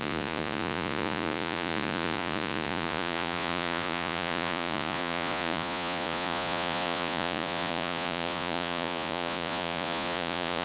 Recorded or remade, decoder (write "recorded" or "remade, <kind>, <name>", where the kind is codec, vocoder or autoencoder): remade, vocoder, Vocos